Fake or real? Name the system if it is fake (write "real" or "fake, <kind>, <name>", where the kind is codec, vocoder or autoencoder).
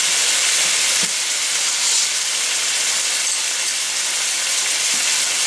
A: real